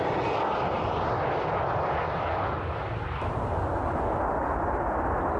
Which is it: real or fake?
real